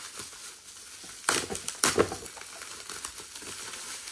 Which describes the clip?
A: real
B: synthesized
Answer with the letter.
A